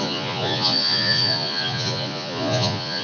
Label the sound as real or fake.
fake